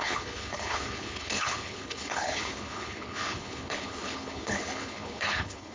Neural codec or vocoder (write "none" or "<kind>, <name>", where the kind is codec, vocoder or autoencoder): codec, HILCodec